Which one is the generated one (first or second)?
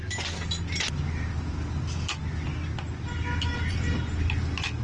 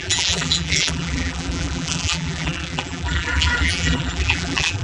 second